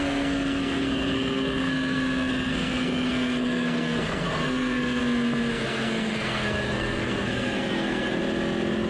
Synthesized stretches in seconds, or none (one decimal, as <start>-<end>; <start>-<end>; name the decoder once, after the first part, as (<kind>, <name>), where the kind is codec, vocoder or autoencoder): 0.0-5.0 (codec, SNAC); 5.5-8.2